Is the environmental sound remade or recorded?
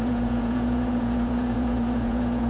remade